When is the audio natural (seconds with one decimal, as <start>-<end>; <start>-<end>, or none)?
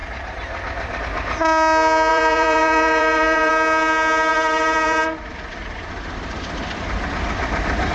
1.0-2.1; 3.5-4.3